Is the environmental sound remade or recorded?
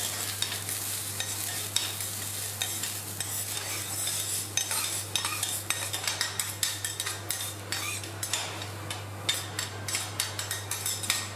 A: recorded